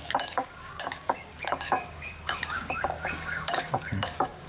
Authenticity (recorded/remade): remade